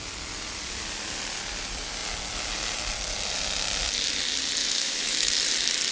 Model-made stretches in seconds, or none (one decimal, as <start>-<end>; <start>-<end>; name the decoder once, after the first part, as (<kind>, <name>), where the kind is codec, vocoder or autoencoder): 4.6-5.3 (autoencoder, DAC-VAE)